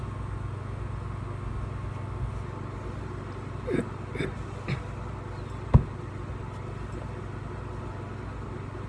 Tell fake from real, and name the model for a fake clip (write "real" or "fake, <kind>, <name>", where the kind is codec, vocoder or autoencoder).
real